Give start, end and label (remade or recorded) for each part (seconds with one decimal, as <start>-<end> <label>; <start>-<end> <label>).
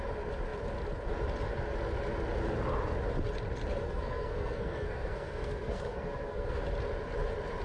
0.0-3.8 recorded; 3.8-6.6 remade; 6.6-7.6 recorded